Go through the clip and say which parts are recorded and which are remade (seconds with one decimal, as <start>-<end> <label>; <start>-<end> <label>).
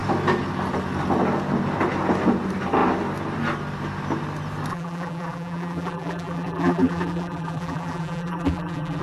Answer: 0.0-4.7 recorded; 4.7-9.0 remade